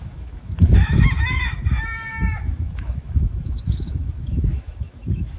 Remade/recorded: remade